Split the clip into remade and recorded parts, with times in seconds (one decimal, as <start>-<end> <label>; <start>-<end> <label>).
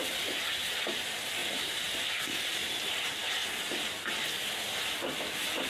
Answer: 0.0-1.4 recorded; 1.4-2.9 remade; 2.9-5.7 recorded